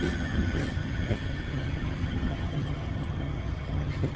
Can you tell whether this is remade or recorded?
remade